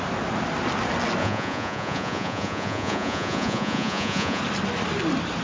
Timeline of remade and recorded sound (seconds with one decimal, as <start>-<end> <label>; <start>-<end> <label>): 0.0-1.2 recorded; 1.2-4.4 remade; 4.4-5.4 recorded

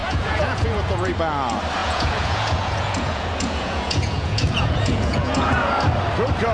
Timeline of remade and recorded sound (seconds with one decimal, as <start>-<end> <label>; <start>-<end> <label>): 0.0-1.1 remade; 1.1-1.8 recorded; 1.8-5.7 remade; 5.7-6.5 recorded

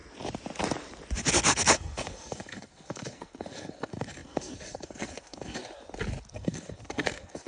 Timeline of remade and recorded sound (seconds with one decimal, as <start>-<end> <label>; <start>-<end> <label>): 0.0-1.3 recorded; 1.3-5.6 remade; 5.6-6.3 recorded; 6.3-7.5 remade

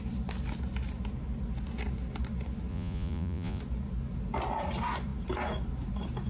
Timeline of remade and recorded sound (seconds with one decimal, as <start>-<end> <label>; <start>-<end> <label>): 0.0-2.7 recorded; 2.7-3.6 remade; 3.6-6.3 recorded